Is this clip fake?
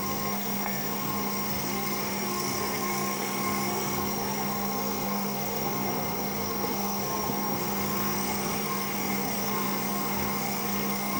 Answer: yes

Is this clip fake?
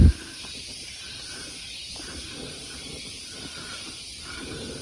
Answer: yes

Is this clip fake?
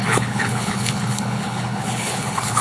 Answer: yes